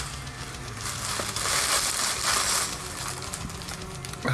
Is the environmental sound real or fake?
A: real